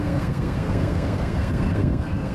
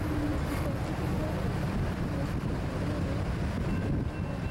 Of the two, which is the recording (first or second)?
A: second